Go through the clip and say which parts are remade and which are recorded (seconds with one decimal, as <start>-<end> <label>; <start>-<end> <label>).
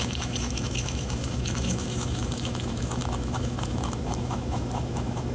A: 0.0-5.3 remade